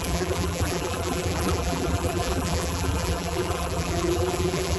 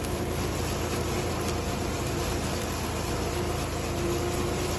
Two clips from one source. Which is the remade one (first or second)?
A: first